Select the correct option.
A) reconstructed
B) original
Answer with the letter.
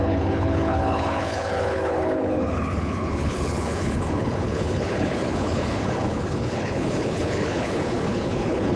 A